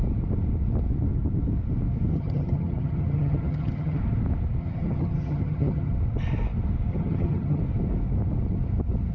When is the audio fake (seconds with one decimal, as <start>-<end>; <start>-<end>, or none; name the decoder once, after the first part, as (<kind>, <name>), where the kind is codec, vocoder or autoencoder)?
2.1-4.0 (vocoder, HiFi-GAN); 4.6-5.9; 6.9-7.6